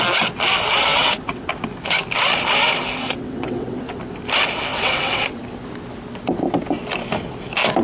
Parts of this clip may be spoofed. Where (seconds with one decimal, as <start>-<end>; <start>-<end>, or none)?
0.9-1.5; 3.0-3.8; 4.7-5.4